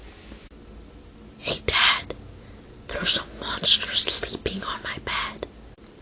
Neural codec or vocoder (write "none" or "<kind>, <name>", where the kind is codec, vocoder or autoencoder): none